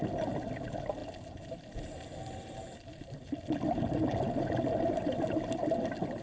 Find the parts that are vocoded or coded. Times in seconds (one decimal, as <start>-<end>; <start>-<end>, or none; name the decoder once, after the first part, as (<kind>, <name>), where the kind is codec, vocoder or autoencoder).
none

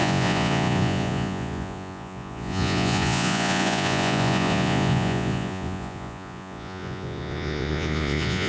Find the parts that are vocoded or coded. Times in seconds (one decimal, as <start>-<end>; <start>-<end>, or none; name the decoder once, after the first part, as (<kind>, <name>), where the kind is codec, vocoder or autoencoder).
0.0-8.5 (vocoder, Vocos)

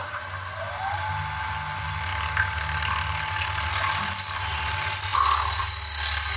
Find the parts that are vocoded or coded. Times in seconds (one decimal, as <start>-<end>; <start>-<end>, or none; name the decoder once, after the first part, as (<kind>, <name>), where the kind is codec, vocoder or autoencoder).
none

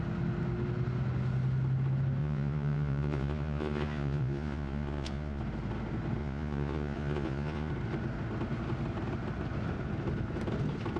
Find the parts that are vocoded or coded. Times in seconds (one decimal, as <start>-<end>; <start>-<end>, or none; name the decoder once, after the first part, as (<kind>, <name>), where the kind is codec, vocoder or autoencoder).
2.2-5.4 (vocoder, Vocos); 6.2-7.7

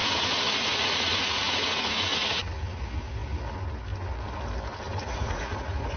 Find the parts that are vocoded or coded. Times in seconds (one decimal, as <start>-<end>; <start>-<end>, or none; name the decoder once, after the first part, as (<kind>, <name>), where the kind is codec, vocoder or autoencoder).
0.0-2.4 (vocoder, Vocos); 4.9-6.0

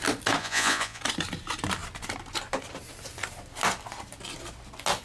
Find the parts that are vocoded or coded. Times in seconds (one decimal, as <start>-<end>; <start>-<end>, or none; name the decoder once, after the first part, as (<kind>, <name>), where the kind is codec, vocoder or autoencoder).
0.4-1.0 (vocoder, Vocos)